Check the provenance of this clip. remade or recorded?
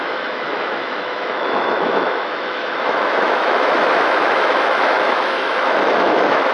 remade